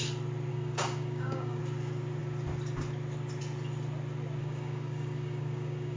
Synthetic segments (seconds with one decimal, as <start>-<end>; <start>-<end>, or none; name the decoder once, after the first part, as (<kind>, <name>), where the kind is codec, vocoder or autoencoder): 0.5-1.6 (codec, DAC); 4.4-6.0